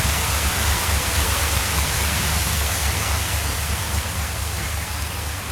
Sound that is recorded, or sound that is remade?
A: remade